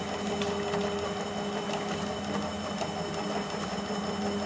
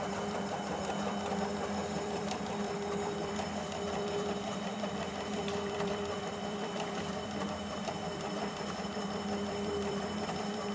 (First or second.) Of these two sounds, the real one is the first